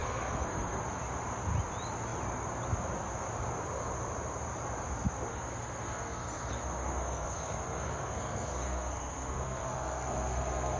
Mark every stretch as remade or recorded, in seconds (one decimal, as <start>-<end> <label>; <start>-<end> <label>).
0.0-0.8 remade; 0.8-5.3 recorded; 5.3-10.8 remade